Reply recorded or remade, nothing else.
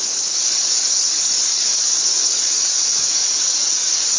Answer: remade